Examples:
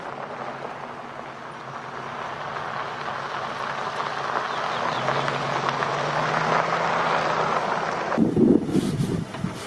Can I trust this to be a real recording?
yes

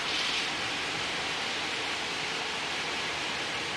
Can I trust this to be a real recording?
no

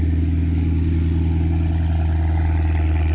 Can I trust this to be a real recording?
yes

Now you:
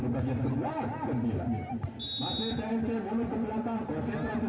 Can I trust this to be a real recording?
yes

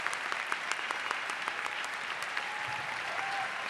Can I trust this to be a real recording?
no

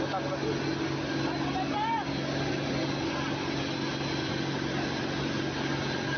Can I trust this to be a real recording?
yes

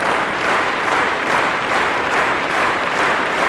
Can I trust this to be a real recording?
no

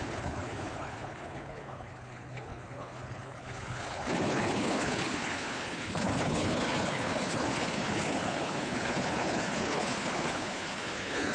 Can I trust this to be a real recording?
no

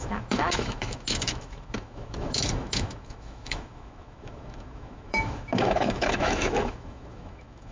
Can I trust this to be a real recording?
no